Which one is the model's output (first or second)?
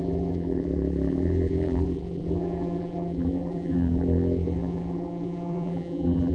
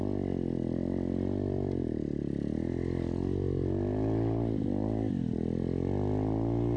first